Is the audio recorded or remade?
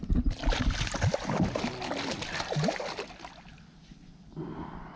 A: recorded